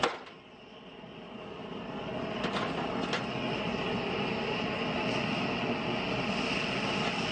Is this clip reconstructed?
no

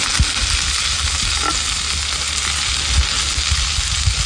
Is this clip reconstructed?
no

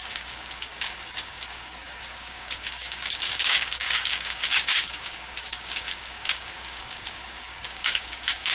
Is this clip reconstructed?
yes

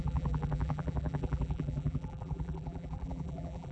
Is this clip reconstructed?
yes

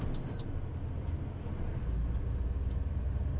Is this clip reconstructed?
no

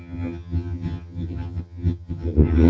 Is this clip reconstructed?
yes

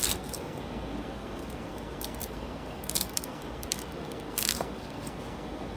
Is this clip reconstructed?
yes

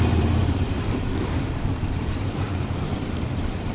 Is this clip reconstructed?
yes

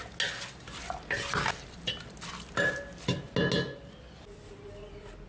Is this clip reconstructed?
no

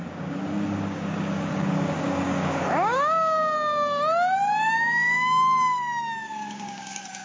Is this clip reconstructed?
yes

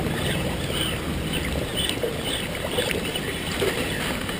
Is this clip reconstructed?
no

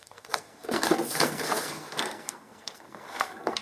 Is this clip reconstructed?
yes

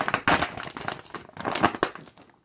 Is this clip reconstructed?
no